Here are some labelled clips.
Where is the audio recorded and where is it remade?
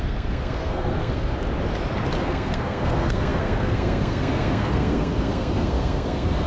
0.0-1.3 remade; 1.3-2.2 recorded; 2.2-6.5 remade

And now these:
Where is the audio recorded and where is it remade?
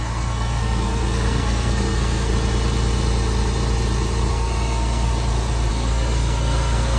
0.0-2.3 remade; 2.3-4.3 recorded; 4.3-5.1 remade; 5.1-5.7 recorded; 5.7-7.0 remade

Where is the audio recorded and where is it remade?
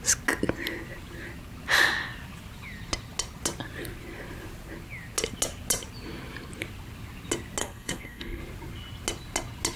0.0-7.6 recorded; 7.6-8.4 remade; 8.4-9.8 recorded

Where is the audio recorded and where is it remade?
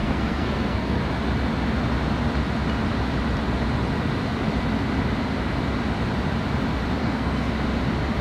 0.0-1.0 remade; 1.0-7.0 recorded; 7.0-7.5 remade; 7.5-8.2 recorded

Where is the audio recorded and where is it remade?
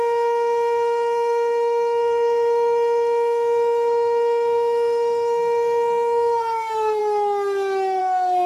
0.0-7.0 remade; 7.0-8.0 recorded; 8.0-8.5 remade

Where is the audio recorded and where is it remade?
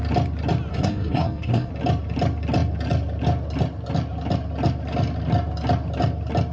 0.0-0.7 recorded; 0.7-1.7 remade; 1.7-6.5 recorded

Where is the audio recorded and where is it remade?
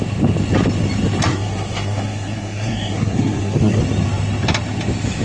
0.0-1.3 recorded; 1.3-3.8 remade; 3.8-5.2 recorded